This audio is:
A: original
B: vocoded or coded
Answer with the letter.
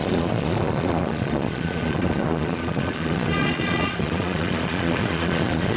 B